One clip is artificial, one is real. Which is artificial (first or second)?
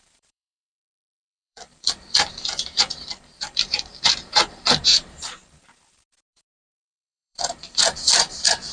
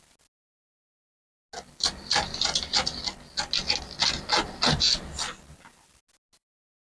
first